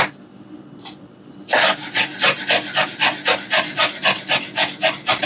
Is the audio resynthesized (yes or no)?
no